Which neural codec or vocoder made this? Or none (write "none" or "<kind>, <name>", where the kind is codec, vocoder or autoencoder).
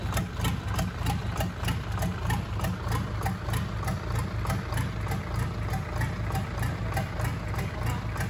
none